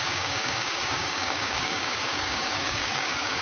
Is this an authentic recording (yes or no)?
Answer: no